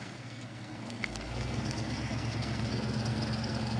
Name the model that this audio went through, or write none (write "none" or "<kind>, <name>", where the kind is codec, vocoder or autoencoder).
codec, SNAC